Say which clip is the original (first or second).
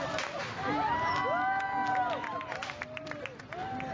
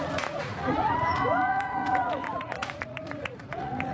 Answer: first